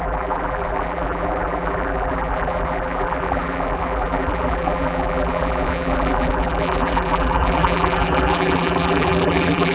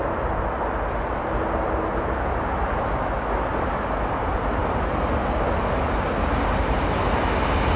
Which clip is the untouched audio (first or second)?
second